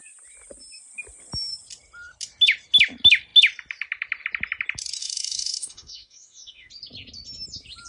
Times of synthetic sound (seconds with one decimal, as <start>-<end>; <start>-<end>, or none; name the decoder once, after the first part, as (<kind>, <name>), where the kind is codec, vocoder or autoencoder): 5.0-6.7 (autoencoder, DAC-VAE)